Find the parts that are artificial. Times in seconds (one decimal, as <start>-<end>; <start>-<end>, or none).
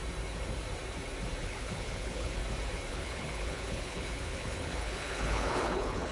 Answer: 1.4-2.4; 2.9-6.1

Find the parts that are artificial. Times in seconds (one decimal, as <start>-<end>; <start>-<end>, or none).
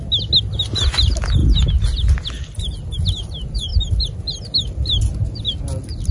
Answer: none